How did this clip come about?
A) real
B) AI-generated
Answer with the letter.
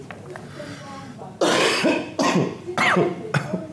A